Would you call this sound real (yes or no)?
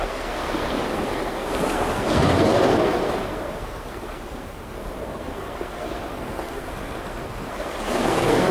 no